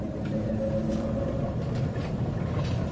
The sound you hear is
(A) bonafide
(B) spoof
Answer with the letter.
B